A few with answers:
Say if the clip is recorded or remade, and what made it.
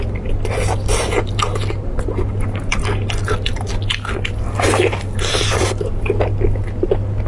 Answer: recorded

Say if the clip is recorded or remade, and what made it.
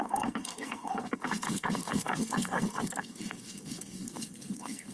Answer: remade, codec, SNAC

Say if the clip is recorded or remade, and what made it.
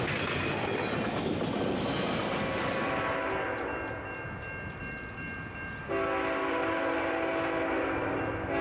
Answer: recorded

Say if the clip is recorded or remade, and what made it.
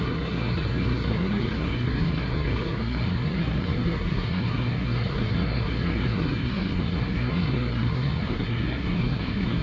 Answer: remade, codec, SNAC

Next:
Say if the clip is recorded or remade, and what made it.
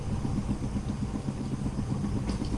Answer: recorded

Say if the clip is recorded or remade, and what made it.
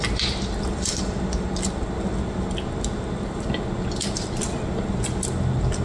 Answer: recorded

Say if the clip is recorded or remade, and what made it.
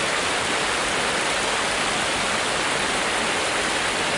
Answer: recorded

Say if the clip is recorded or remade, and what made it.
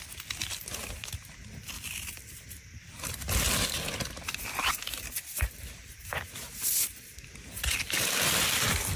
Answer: recorded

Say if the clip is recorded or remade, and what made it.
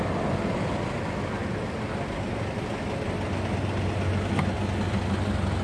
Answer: recorded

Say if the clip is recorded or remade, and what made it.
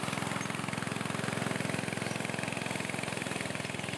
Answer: recorded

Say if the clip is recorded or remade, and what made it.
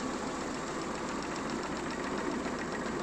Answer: recorded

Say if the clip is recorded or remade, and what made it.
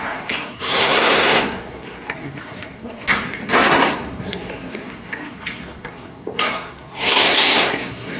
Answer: remade, codec, SNAC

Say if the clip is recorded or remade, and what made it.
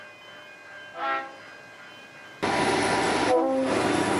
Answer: recorded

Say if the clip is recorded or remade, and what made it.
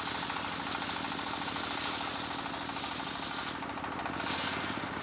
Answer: recorded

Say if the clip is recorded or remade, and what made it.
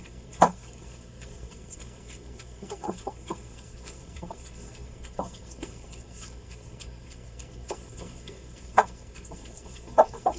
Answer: remade, codec, SNAC